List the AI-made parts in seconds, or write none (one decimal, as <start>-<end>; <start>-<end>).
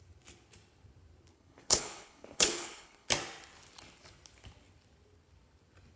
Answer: 1.3-3.1